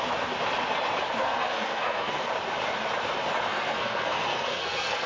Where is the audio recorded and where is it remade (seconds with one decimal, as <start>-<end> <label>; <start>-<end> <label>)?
0.0-1.2 recorded; 1.2-2.3 remade; 2.3-3.5 recorded; 3.5-5.1 remade